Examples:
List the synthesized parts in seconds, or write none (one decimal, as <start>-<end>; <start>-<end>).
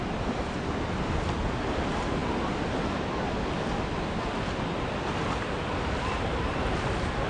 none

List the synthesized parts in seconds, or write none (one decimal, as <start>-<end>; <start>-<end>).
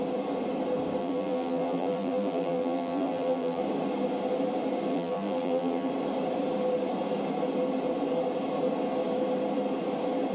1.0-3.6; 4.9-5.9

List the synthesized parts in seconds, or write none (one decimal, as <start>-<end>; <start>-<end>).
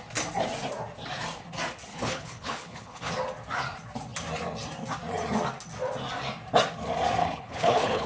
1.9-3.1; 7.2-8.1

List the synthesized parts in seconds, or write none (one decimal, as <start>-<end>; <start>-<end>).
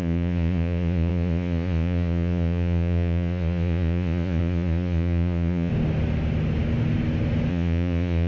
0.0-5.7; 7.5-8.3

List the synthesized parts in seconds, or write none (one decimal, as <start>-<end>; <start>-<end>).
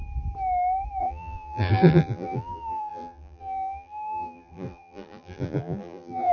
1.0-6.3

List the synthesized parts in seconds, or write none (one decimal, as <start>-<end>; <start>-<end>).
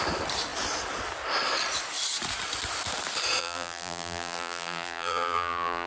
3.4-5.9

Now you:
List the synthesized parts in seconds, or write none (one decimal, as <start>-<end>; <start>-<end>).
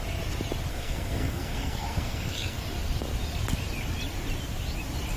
0.7-2.6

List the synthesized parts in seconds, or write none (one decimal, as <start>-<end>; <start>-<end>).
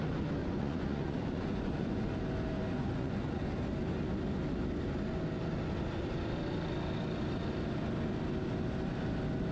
0.4-2.1; 2.7-3.4